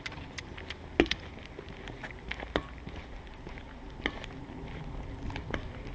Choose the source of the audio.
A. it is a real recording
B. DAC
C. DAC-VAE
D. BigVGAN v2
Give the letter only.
A